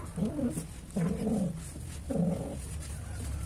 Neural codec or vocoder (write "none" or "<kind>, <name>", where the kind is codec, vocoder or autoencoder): none